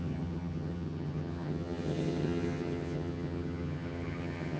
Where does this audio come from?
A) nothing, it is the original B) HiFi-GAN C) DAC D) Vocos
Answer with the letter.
B